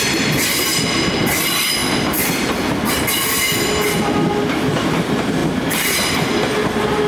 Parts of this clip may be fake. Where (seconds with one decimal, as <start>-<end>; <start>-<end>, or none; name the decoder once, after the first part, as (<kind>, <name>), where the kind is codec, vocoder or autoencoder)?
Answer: none